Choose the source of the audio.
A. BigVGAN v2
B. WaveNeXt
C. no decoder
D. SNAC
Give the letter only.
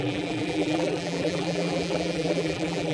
A